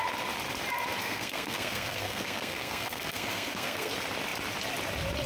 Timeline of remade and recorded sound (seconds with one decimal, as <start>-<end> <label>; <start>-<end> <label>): 0.0-1.0 recorded; 1.0-3.9 remade; 3.9-5.3 recorded